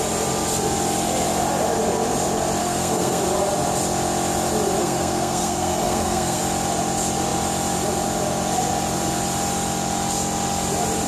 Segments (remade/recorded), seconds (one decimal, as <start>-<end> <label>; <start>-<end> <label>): 0.0-2.6 recorded; 2.6-3.2 remade; 3.2-4.8 recorded; 4.8-6.4 remade; 6.4-11.1 recorded